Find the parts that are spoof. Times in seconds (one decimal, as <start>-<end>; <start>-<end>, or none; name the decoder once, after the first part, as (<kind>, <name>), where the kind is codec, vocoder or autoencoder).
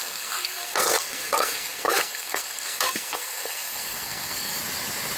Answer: 0.0-4.6 (codec, SNAC)